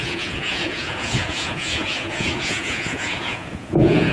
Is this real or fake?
fake